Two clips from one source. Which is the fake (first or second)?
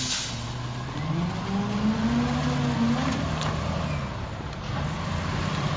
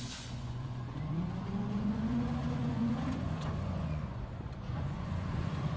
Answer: second